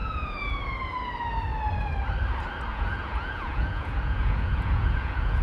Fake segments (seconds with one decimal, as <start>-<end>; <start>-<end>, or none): 0.0-0.6; 2.7-5.4